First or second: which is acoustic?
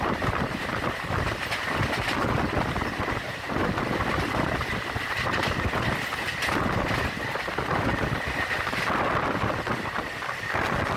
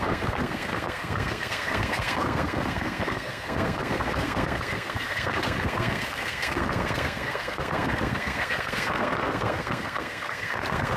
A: first